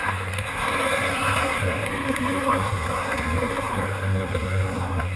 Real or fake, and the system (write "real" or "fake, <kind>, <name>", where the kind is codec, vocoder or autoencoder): fake, codec, SNAC